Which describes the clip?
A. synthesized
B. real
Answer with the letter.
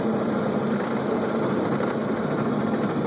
B